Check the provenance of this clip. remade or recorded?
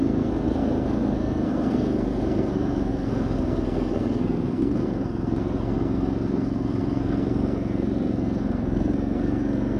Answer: remade